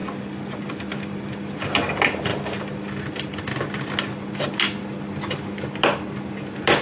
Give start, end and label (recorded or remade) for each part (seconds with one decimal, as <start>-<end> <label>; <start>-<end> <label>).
0.0-6.8 recorded